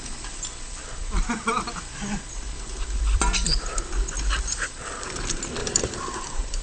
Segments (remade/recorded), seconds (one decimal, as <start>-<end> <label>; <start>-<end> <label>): 0.0-5.6 recorded; 5.6-6.6 remade